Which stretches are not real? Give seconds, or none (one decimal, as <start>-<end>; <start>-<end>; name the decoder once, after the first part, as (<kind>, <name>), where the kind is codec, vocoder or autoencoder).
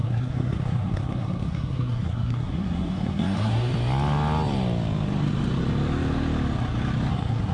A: 0.0-3.7 (codec, SNAC); 7.1-7.5